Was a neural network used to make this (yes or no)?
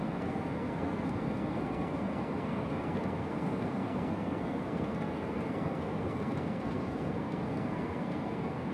yes